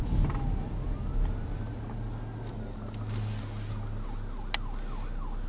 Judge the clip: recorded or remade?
recorded